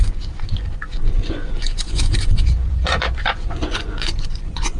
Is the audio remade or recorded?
remade